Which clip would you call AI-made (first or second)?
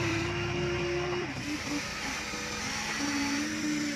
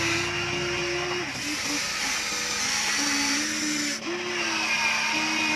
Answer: first